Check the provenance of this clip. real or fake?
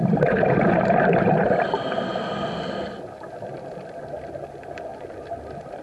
real